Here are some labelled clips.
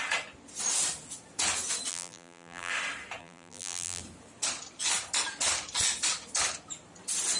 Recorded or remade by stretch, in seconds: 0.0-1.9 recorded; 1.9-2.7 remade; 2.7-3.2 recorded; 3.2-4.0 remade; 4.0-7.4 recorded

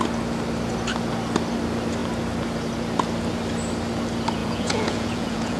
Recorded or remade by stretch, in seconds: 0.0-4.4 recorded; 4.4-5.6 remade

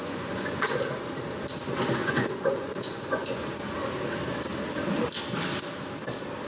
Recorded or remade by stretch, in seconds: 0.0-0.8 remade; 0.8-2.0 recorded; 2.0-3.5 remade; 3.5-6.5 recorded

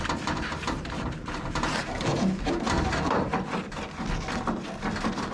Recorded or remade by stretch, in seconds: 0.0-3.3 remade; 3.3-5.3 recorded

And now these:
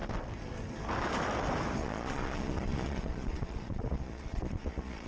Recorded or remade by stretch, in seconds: 0.0-1.8 recorded; 1.8-5.1 remade